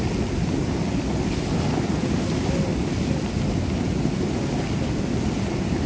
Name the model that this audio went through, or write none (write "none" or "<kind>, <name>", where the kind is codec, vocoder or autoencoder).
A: none